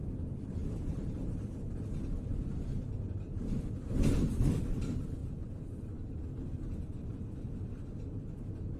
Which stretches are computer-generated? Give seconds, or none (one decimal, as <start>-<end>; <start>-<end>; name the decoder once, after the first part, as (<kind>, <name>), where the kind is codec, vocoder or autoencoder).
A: 0.6-1.8 (vocoder, BigVGAN v2); 5.2-7.2